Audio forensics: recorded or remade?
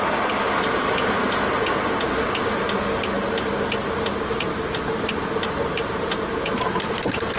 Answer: recorded